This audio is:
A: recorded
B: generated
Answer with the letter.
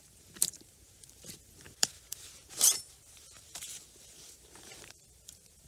B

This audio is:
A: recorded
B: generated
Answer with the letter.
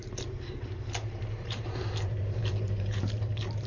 B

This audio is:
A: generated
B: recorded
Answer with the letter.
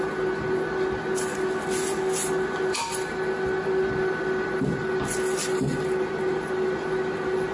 B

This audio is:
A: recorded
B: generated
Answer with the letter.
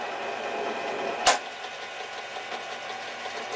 A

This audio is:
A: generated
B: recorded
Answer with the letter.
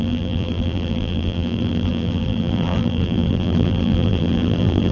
A